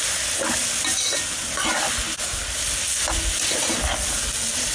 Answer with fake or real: real